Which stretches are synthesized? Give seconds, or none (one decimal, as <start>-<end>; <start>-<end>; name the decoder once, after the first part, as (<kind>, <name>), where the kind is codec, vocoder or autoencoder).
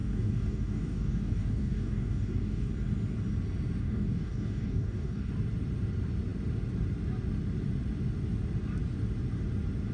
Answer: 0.0-2.7 (codec, DAC); 3.8-5.3